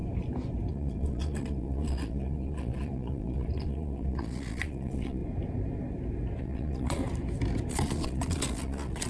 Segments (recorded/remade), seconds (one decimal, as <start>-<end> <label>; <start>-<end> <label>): 0.0-0.7 recorded; 0.7-5.2 remade; 5.2-6.4 recorded; 6.4-7.0 remade; 7.0-7.7 recorded; 7.7-9.1 remade